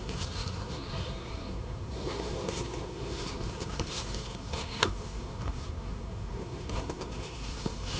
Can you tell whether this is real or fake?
fake